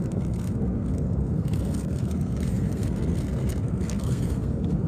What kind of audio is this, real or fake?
fake